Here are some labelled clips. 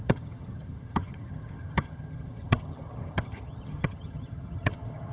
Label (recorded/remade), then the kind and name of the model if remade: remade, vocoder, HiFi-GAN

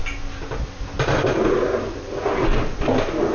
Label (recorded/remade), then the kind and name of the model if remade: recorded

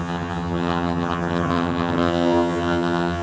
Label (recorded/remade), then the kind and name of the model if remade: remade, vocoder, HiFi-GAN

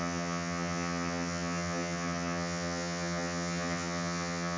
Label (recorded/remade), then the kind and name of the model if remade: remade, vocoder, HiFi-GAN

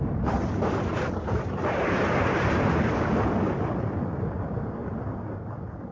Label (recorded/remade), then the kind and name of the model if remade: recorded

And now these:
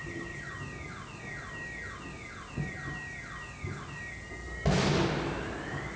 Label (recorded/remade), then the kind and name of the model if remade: recorded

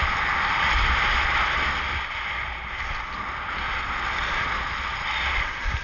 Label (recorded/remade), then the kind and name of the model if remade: recorded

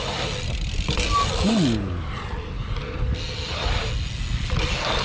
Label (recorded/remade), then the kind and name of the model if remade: recorded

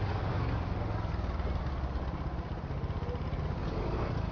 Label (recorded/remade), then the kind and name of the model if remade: recorded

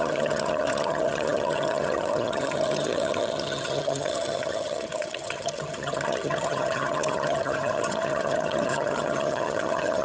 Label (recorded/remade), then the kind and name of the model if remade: remade, vocoder, HiFi-GAN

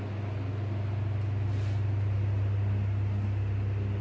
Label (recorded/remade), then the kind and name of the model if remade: recorded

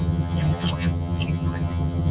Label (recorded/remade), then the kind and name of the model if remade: remade, vocoder, HiFi-GAN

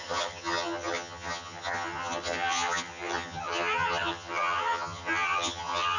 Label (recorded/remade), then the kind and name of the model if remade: remade, vocoder, HiFi-GAN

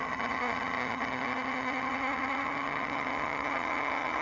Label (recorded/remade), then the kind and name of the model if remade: remade, vocoder, HiFi-GAN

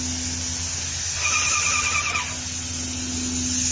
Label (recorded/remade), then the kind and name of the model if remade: recorded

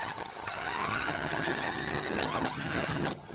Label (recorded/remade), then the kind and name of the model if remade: remade, vocoder, HiFi-GAN